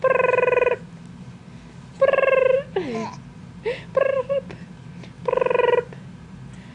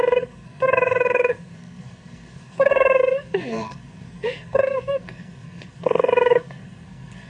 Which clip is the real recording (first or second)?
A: first